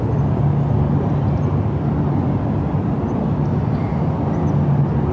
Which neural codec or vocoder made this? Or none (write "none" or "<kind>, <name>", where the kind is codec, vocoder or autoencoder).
none